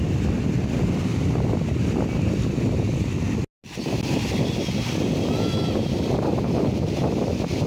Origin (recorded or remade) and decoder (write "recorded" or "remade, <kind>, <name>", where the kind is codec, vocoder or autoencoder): recorded